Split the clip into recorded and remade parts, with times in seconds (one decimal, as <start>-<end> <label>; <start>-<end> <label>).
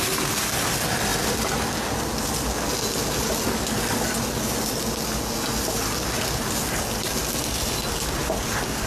0.0-1.1 recorded; 1.1-2.3 remade; 2.3-8.9 recorded